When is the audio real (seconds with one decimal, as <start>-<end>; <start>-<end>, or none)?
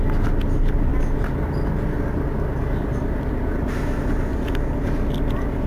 0.0-5.7